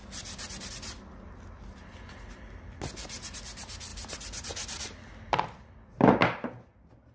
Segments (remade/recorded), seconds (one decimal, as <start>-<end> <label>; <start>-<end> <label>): 0.0-7.1 recorded